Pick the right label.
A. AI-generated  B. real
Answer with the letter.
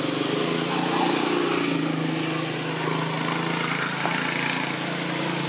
B